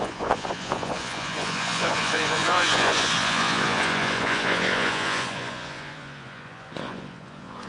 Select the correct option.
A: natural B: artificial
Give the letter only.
B